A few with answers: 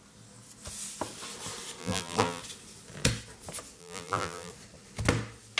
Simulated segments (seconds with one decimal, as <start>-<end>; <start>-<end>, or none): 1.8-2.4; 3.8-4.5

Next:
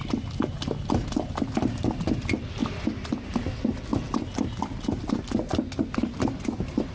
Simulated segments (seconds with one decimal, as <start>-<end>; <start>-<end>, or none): none

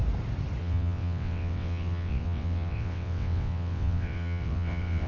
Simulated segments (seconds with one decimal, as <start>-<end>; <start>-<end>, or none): 0.6-5.1